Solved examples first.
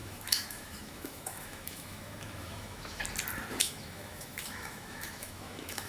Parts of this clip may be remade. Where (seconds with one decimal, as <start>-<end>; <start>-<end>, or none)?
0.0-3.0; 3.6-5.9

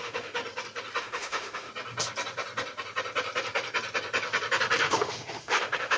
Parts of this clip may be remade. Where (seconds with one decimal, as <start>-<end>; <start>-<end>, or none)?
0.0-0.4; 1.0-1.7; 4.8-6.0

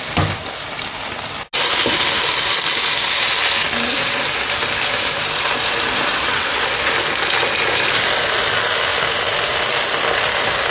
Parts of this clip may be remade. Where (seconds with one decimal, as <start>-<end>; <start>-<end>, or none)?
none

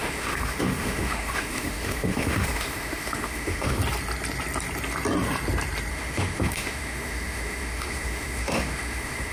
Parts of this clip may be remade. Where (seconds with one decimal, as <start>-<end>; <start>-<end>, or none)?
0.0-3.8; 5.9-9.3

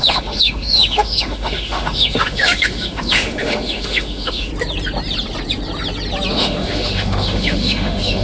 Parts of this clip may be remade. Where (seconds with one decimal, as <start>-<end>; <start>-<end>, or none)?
0.0-4.5; 6.3-8.2